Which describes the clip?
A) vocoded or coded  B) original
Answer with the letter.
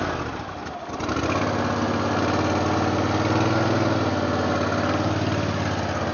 B